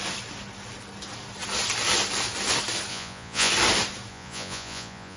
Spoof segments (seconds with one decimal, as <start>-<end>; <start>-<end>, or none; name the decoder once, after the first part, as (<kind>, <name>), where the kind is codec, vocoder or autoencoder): 2.9-3.5 (vocoder, Vocos); 4.1-5.2